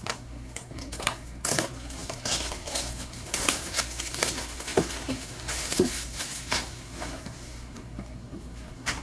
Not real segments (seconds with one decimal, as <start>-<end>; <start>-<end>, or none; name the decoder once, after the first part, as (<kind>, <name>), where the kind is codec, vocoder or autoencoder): 0.0-9.0 (codec, SNAC)

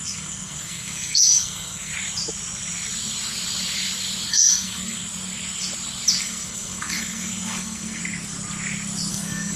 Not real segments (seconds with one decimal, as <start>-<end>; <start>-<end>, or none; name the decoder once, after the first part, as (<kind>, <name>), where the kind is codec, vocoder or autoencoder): 0.0-1.9 (codec, SNAC); 4.3-5.0; 6.2-8.0; 9.1-9.6

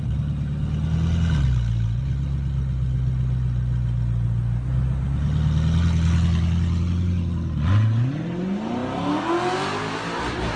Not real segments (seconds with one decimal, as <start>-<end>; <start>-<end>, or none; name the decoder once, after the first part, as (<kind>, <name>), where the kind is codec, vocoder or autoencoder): none

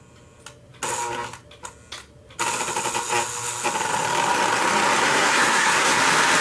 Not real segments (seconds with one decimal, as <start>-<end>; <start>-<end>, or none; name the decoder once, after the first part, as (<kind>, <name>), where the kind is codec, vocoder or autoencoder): 5.0-6.0 (codec, SNAC)

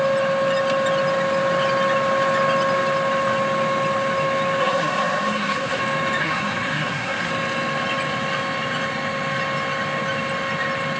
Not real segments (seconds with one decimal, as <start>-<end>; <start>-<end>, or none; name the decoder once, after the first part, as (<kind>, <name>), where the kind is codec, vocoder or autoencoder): 4.6-5.8 (codec, SNAC); 6.2-7.3

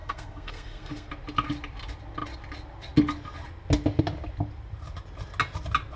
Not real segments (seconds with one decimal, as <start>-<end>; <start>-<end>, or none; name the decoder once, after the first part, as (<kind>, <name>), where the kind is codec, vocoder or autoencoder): 0.0-1.1 (codec, SNAC)